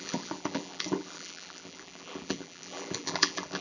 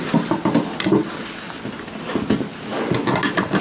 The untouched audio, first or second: second